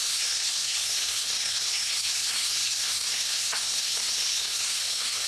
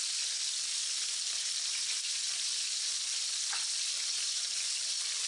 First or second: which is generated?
first